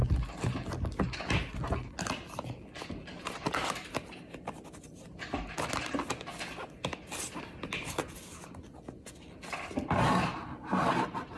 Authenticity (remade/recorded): recorded